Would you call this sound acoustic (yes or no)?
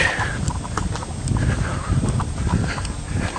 yes